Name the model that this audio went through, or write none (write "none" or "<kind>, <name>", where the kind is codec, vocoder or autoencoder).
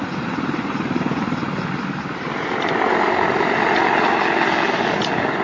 none